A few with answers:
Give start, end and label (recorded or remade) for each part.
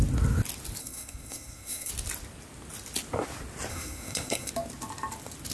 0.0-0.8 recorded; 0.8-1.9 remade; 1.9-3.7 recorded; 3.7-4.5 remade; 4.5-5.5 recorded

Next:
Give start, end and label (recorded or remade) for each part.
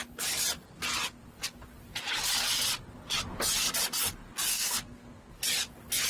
0.0-4.5 recorded; 4.5-5.3 remade; 5.3-6.1 recorded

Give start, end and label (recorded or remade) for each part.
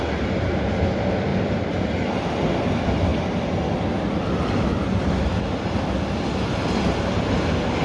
0.0-7.8 recorded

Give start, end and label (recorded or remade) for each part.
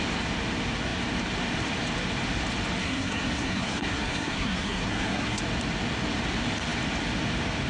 0.0-2.8 recorded; 2.8-5.4 remade; 5.4-7.7 recorded